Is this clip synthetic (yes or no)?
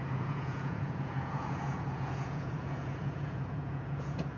yes